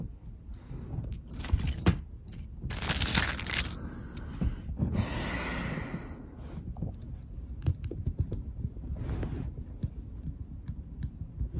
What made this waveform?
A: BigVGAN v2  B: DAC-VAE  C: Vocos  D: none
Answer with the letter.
D